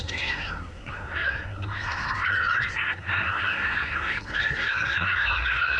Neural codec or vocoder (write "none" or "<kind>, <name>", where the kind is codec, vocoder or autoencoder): codec, SNAC